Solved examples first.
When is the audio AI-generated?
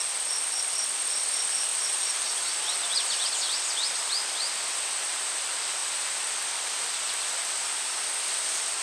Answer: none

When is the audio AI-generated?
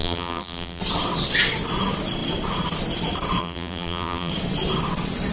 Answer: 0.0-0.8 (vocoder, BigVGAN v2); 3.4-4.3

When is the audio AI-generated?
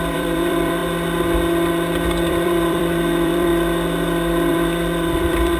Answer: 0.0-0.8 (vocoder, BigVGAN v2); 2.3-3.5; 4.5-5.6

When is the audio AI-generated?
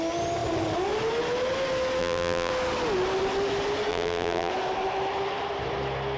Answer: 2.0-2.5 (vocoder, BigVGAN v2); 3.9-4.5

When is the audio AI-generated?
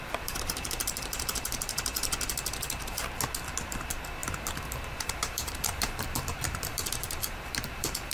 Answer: 0.0-1.9 (vocoder, BigVGAN v2); 3.7-8.1